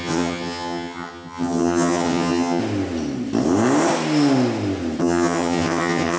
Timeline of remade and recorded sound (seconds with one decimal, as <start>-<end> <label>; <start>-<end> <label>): 0.0-2.6 remade; 2.6-5.0 recorded; 5.0-6.2 remade